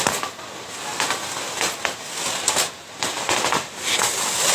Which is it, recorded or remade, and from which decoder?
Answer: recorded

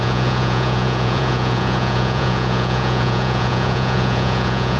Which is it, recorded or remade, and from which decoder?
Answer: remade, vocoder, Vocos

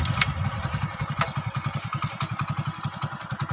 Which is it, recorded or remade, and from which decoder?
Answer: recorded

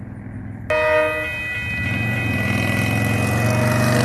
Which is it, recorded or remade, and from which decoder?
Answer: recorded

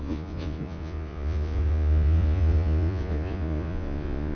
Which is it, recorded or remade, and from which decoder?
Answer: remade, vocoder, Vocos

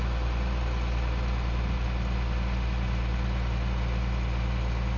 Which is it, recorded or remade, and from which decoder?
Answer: recorded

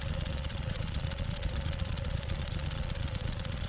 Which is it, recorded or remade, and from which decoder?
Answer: remade, vocoder, Vocos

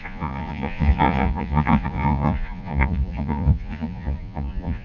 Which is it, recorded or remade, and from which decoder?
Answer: remade, vocoder, Vocos